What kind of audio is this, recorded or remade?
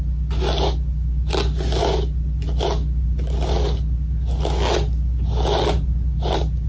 recorded